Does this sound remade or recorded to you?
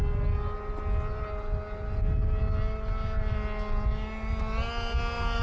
recorded